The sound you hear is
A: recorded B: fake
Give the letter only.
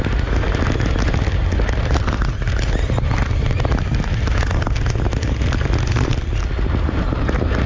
A